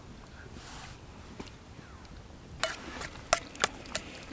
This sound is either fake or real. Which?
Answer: real